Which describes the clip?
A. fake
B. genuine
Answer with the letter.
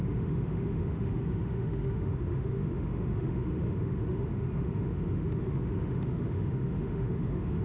A